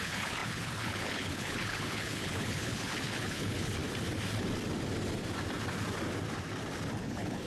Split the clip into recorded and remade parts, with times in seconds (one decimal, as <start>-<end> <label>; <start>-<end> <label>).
0.0-3.8 remade; 3.8-6.9 recorded; 6.9-7.5 remade